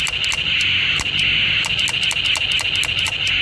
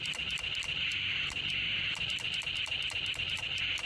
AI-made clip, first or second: second